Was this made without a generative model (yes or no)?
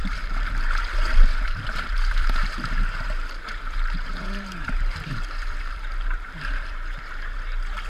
no